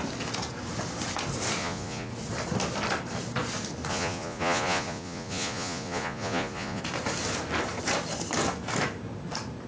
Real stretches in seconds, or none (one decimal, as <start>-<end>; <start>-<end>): 0.0-1.6; 2.1-3.9; 6.8-9.7